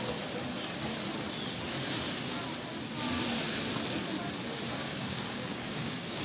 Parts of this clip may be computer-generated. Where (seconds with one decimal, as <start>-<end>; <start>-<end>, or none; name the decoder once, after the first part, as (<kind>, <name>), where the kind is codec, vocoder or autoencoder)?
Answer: 4.8-6.2 (codec, DAC)